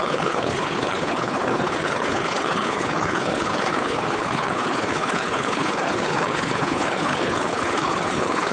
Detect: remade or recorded remade